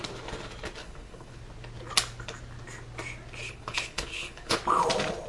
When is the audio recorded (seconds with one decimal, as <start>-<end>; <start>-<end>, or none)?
0.0-0.8; 1.4-3.4; 4.6-5.3